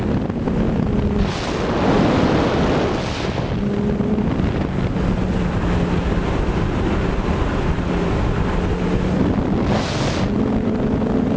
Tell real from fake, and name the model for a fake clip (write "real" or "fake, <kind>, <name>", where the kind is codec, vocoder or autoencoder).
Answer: real